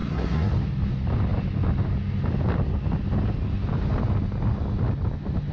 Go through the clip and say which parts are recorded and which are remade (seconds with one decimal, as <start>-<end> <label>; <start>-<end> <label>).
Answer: 0.0-0.5 remade; 0.5-5.5 recorded